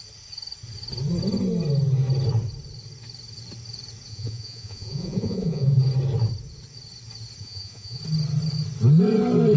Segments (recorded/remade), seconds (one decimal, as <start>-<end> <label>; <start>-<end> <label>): 0.0-4.1 recorded; 4.1-5.8 remade; 5.8-7.4 recorded; 7.4-8.0 remade; 8.0-9.6 recorded